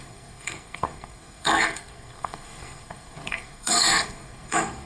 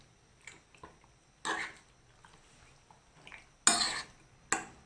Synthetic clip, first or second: first